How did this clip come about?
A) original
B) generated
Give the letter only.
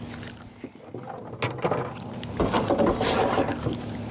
A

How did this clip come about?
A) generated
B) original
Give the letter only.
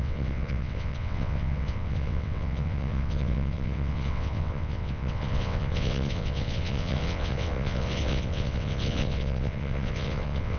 A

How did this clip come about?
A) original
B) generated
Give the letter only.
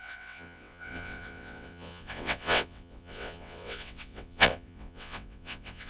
B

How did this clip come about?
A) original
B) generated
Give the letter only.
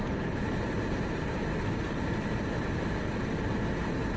A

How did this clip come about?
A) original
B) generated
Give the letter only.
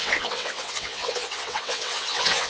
B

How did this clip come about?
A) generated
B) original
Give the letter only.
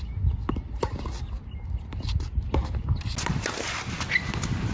B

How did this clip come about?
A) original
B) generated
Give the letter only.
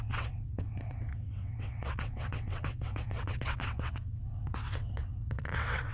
B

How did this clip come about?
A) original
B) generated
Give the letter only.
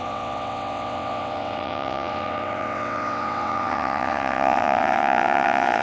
B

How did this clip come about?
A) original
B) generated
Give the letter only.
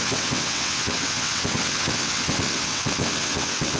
B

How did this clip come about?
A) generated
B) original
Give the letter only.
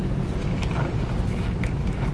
B